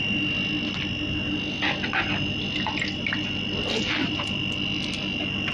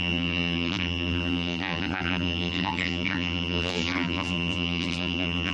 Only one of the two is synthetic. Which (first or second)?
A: second